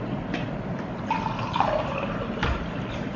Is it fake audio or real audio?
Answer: real